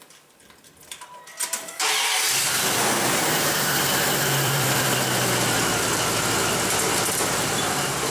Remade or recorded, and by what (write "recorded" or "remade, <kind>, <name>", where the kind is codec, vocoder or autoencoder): remade, vocoder, BigVGAN v2